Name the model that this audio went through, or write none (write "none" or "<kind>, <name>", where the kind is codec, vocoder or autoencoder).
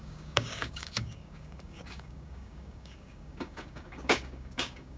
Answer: codec, DAC